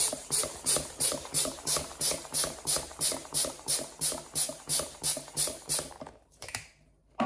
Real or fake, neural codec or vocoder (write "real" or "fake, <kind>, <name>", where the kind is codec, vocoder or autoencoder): fake, vocoder, BigVGAN v2